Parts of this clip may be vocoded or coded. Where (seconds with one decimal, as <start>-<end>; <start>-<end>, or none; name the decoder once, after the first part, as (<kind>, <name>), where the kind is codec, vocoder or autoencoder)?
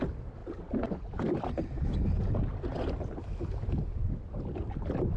none